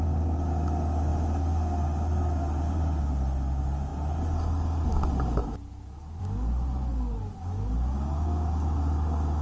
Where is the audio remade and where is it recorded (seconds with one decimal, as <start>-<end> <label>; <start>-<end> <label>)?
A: 0.0-9.4 recorded